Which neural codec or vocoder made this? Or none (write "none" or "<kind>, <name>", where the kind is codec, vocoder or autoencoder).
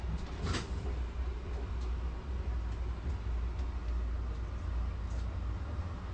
none